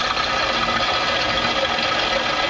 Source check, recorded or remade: recorded